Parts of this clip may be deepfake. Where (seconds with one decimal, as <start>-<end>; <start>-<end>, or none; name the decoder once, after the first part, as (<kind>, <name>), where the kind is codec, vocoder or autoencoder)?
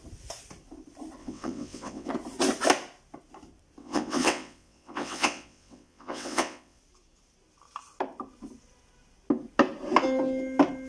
1.2-2.1 (vocoder, WaveNeXt); 3.8-6.8